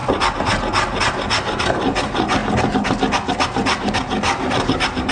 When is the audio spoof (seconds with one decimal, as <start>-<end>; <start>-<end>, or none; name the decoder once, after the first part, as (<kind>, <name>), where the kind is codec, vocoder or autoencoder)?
none